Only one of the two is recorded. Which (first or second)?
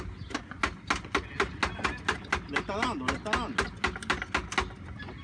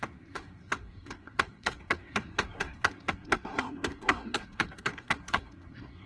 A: first